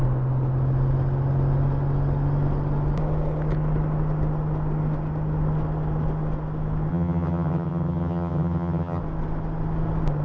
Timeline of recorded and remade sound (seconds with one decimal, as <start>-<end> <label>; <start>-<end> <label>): 0.0-6.9 recorded; 6.9-9.0 remade; 9.0-10.2 recorded